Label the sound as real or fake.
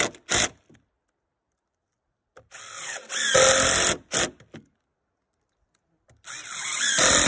real